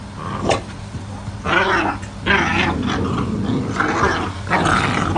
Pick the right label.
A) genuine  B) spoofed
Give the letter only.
A